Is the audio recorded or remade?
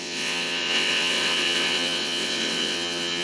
remade